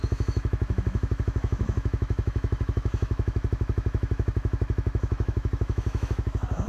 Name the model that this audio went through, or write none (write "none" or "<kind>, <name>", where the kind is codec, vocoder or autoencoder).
autoencoder, DAC-VAE